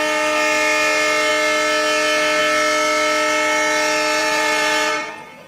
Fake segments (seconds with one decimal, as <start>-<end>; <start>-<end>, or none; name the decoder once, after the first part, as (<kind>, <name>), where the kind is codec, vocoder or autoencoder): 4.2-5.1 (vocoder, BigVGAN v2)